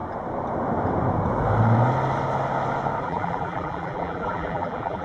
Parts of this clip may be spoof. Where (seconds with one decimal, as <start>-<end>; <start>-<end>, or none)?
3.0-5.0

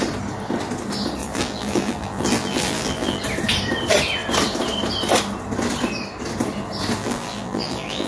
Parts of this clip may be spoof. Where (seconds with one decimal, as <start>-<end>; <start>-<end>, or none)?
1.2-3.2; 7.0-8.1

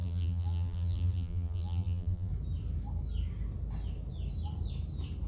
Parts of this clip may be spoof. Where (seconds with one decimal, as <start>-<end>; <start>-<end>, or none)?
0.0-2.3

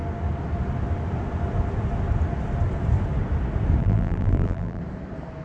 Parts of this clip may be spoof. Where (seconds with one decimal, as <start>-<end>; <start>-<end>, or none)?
3.8-4.8

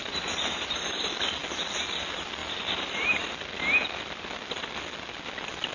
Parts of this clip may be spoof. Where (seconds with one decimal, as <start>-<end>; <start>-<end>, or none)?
0.0-1.0; 2.4-3.2

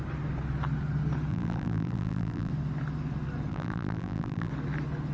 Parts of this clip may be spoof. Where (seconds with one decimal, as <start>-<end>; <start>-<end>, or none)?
1.3-2.5; 3.5-4.5

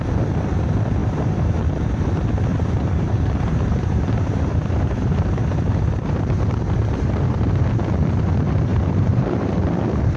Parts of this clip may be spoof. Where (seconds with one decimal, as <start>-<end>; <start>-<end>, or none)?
1.0-1.5; 2.5-7.6; 8.7-9.6

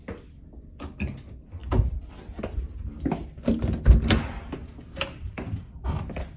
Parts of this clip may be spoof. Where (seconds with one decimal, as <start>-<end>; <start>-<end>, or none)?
none